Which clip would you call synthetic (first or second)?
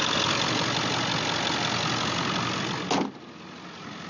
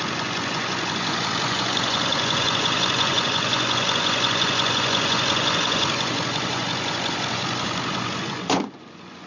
second